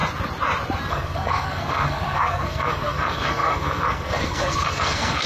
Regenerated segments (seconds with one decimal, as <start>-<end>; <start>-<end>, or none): 0.9-5.3